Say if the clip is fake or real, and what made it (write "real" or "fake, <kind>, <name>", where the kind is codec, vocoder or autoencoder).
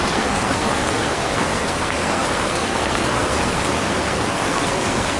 fake, codec, SNAC